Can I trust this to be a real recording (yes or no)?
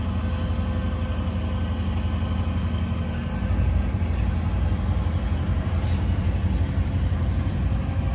yes